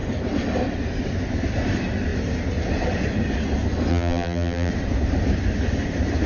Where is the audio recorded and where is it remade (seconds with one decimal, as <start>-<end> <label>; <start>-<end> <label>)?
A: 0.0-3.9 recorded; 3.9-4.7 remade; 4.7-6.3 recorded